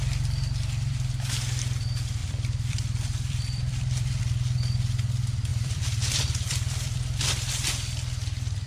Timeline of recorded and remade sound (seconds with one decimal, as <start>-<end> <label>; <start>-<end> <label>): 0.0-2.2 recorded; 2.2-4.2 remade; 4.2-5.5 recorded; 5.5-7.5 remade; 7.5-8.7 recorded